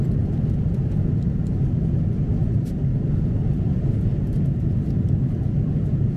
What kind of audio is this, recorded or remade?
recorded